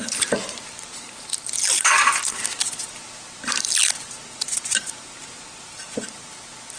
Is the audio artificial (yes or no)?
no